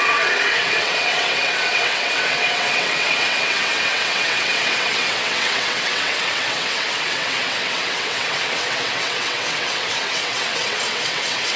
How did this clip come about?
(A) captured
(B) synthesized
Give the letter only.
B